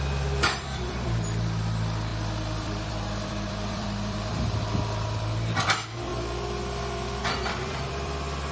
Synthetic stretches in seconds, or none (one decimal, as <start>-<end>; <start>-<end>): 0.0-6.1; 7.2-8.5

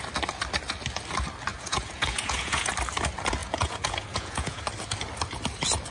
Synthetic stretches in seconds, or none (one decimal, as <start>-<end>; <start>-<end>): 1.5-2.7; 3.4-4.6

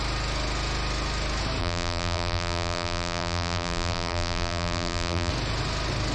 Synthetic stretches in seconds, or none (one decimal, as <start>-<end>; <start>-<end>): 1.6-5.3